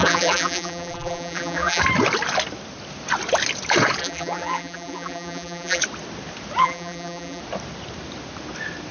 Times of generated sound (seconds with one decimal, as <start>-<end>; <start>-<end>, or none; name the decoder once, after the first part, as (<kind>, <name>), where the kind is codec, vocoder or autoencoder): 0.0-1.8 (vocoder, BigVGAN v2); 4.0-5.8; 6.6-7.4